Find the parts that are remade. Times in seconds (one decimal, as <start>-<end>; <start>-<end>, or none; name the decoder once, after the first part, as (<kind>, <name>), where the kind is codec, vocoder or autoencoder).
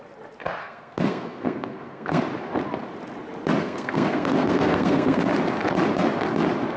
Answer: 0.6-2.2 (codec, SNAC); 3.6-5.2